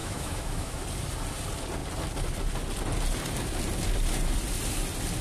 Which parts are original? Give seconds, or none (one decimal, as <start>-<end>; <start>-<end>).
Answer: 0.8-5.2